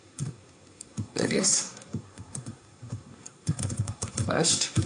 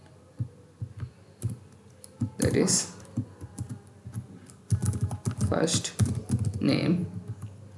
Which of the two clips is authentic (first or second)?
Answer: second